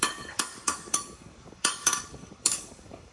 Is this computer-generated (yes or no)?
yes